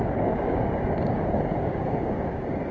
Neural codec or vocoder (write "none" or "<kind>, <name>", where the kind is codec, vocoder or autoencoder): codec, DAC